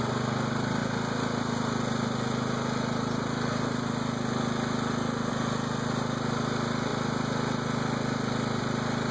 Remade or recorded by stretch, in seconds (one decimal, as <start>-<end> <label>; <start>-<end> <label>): 0.0-9.1 recorded